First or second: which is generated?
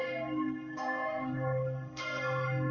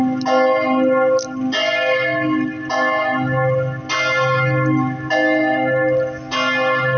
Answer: first